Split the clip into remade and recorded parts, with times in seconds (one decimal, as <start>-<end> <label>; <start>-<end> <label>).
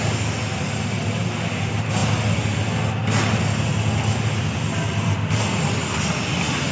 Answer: 0.0-6.7 recorded